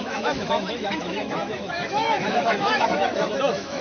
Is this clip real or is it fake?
fake